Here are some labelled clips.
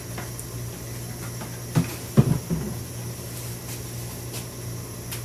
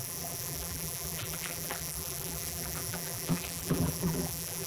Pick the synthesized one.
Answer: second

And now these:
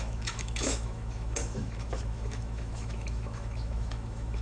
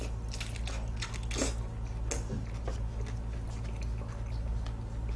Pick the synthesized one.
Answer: first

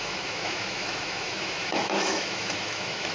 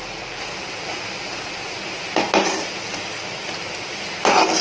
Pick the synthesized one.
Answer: first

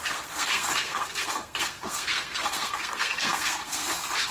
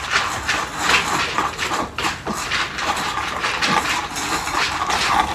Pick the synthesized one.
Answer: first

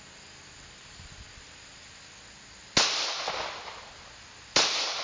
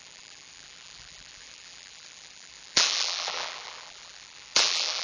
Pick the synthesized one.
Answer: second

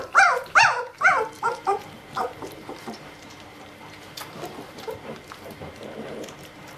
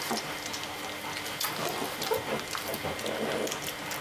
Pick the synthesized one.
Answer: first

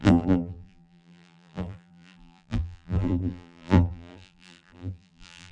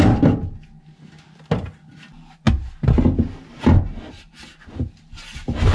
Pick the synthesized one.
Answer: first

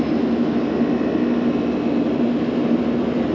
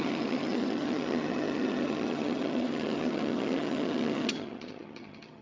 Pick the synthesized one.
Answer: second